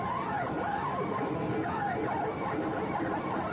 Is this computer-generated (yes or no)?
no